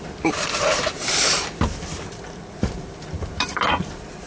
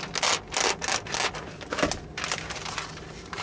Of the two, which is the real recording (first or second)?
second